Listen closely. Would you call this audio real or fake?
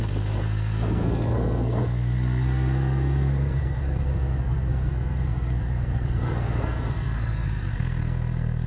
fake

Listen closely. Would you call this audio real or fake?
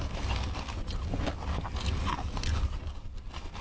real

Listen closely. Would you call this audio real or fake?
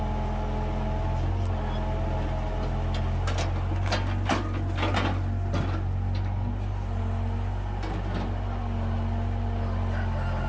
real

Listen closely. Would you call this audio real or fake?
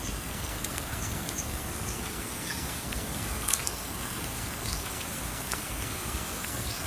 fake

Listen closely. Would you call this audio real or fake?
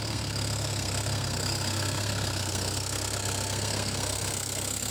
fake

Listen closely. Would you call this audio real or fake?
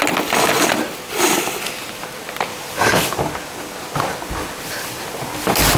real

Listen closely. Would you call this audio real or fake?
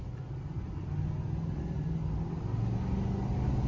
real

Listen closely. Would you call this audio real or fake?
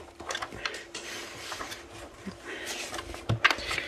real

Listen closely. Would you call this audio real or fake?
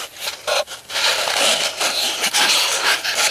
real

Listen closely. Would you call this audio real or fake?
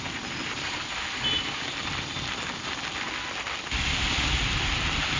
real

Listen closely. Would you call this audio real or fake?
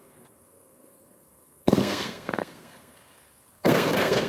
fake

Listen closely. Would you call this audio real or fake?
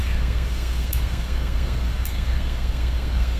fake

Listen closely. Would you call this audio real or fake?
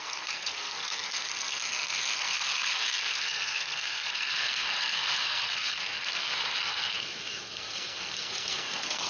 fake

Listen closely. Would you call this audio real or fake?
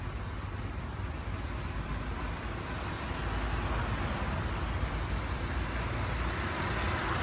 real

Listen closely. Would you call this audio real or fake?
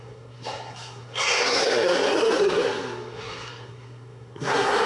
fake